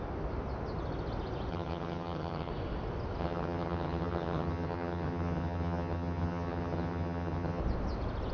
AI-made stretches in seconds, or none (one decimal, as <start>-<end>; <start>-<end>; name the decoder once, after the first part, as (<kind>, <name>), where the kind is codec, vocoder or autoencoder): 1.5-2.5 (vocoder, HiFi-GAN); 3.2-7.6